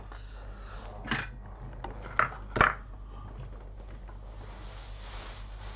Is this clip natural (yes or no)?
yes